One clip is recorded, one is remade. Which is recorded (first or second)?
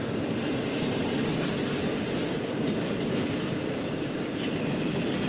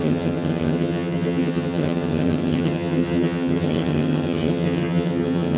first